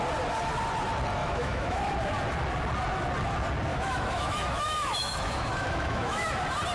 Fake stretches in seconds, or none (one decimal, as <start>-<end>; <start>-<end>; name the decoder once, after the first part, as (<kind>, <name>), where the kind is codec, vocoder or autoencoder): 1.2-1.9 (autoencoder, DAC-VAE); 3.7-6.3